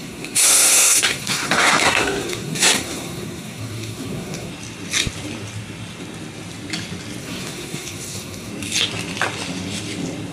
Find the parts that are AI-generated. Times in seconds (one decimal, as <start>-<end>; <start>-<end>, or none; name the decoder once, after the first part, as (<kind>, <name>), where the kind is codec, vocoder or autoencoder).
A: 0.0-4.5 (codec, SNAC); 7.2-8.5